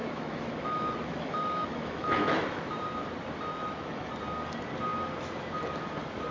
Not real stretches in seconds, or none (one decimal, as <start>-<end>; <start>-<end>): 0.0-2.7; 3.5-4.1